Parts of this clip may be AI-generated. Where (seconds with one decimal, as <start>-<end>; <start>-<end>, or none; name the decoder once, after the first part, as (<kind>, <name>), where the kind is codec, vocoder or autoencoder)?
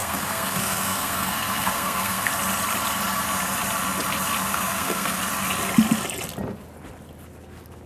0.0-2.3 (codec, SNAC); 4.5-5.2